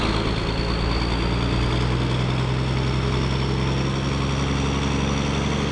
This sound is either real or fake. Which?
real